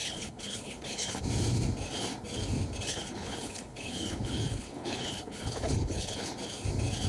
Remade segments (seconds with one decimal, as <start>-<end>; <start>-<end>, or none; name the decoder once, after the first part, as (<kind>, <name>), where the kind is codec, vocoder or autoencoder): 0.0-1.2 (codec, HILCodec); 2.9-6.3